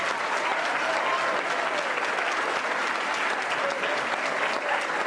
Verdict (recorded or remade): recorded